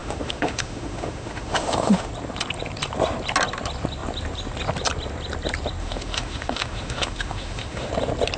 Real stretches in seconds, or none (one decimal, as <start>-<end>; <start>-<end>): 2.1-5.8; 7.9-8.4

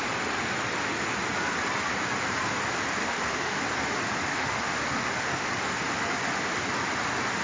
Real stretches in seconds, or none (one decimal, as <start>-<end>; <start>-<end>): 0.0-3.0; 3.6-4.3; 5.5-7.4

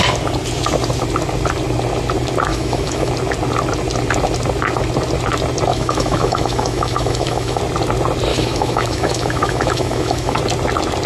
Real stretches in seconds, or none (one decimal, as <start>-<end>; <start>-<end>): 0.0-2.5; 3.1-5.7; 7.6-8.3; 10.4-11.1

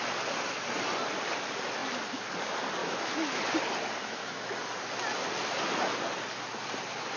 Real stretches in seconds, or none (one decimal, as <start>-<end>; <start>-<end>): 0.0-2.8; 3.4-4.0; 4.5-7.2

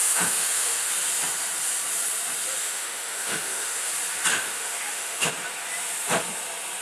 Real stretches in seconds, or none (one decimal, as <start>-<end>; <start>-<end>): 0.9-2.6; 3.9-4.3; 5.3-6.8